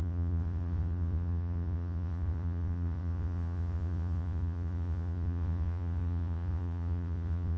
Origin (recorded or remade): remade